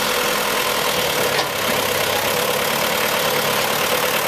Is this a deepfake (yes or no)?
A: no